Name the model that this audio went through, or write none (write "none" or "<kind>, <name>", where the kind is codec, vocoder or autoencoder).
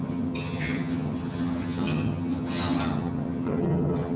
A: vocoder, HiFi-GAN